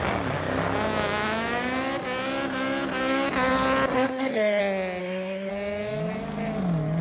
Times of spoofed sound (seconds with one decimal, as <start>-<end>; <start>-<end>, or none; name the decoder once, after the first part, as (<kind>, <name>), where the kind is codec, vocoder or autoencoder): 3.9-4.6 (codec, SNAC); 5.0-5.5